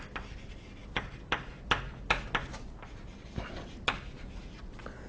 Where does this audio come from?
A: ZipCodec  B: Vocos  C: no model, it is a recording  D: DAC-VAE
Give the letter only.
C